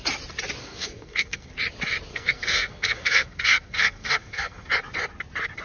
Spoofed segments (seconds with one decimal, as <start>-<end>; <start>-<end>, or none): 0.6-1.5; 2.1-4.7